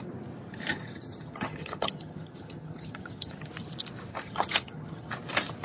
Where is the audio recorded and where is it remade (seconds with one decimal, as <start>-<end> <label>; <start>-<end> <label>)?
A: 0.0-0.7 recorded; 0.7-3.5 remade; 3.5-4.1 recorded; 4.1-5.1 remade; 5.1-5.6 recorded